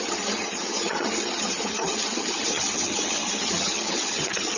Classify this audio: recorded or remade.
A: remade